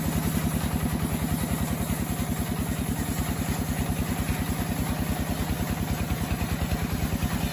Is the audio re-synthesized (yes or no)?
no